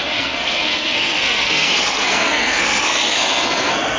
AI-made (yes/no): yes